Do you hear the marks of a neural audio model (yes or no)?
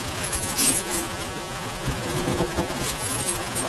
yes